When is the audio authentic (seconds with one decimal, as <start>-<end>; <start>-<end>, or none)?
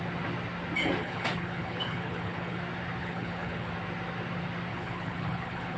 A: 0.0-1.0; 2.6-3.0; 3.7-4.7